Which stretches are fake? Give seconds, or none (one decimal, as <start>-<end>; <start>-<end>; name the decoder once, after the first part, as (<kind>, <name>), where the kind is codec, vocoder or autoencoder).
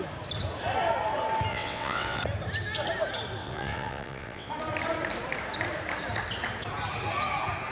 1.5-2.2 (vocoder, WaveNeXt); 3.4-4.5